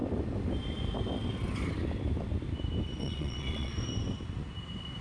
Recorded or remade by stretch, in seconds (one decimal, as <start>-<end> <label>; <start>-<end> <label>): 0.0-3.0 recorded; 3.0-3.7 remade; 3.7-5.0 recorded